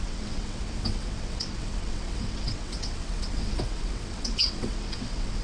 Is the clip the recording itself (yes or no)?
no